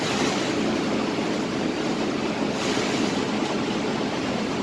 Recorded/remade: recorded